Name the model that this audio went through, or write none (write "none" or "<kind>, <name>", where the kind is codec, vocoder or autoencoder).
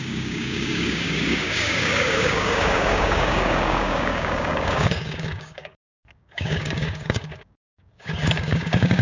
codec, DAC